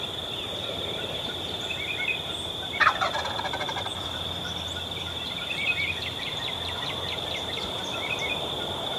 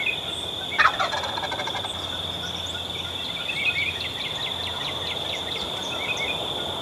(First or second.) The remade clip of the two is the first